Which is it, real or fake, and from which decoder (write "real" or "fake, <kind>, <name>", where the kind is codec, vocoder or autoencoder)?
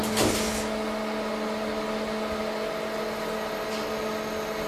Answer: real